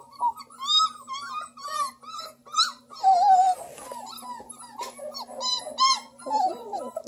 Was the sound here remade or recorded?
recorded